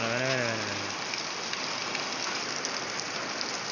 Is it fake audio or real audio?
real